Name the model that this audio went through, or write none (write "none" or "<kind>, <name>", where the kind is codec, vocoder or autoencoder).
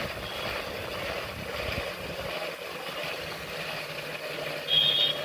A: none